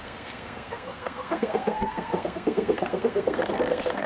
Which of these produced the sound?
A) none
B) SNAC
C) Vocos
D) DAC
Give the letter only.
B